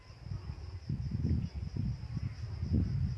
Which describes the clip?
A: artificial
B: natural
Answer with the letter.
B